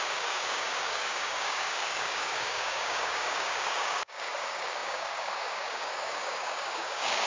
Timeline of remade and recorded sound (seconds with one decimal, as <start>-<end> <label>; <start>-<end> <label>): 0.0-7.3 remade